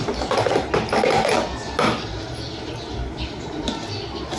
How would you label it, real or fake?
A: real